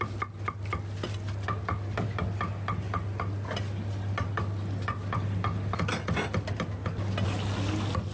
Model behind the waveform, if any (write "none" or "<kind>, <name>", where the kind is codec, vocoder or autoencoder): none